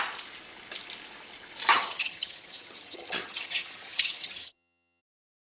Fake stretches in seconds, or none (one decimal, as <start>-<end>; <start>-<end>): 1.7-5.0